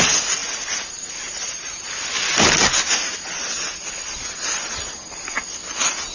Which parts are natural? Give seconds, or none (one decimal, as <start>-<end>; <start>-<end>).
0.0-6.1